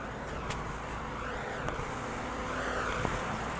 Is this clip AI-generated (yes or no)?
no